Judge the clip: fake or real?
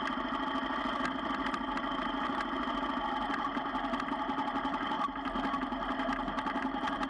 real